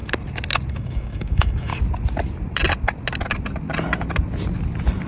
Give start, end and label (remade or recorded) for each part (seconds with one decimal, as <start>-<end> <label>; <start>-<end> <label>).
0.0-0.7 recorded; 0.7-1.7 remade; 1.7-5.1 recorded